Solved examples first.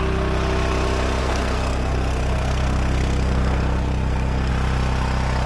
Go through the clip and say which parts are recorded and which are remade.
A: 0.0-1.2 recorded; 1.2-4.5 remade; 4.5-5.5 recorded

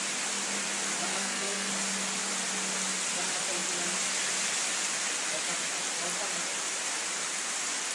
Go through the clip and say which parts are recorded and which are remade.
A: 0.0-1.1 recorded; 1.1-1.7 remade; 1.7-7.9 recorded